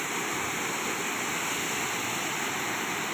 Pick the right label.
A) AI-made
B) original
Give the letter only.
B